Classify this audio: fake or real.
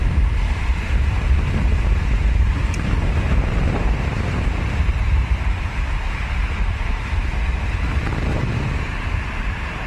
fake